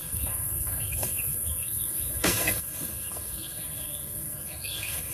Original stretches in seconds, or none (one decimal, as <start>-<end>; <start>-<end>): none